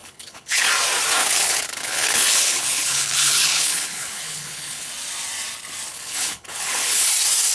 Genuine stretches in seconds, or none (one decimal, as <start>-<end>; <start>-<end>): 0.7-1.2; 4.9-5.9; 7.1-7.5